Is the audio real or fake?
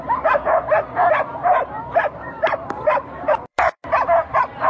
fake